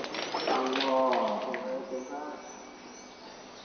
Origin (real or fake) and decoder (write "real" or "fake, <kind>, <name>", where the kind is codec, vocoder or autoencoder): real